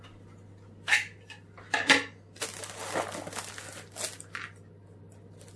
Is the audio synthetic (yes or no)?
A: no